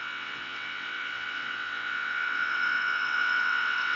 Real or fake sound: fake